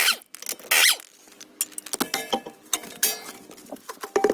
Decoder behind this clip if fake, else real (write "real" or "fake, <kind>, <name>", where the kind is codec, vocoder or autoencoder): real